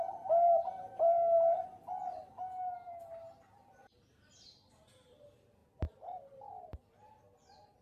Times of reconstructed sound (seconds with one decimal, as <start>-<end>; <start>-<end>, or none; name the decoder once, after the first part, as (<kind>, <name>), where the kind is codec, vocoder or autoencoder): none